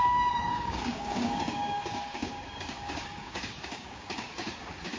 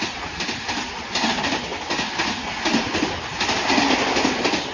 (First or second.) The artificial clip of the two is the first